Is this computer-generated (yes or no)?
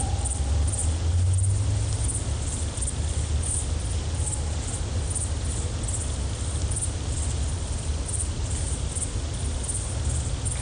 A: no